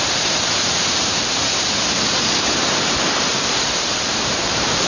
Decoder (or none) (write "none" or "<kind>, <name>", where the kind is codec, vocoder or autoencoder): vocoder, BigVGAN v2